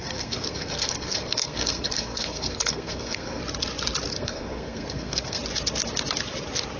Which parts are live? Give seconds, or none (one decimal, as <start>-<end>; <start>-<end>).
3.4-4.1; 5.4-6.8